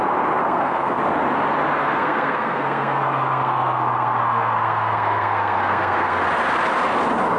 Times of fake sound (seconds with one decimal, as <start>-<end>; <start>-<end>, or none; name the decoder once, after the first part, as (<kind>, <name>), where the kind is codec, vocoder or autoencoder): 0.4-1.0 (codec, SNAC); 1.8-6.2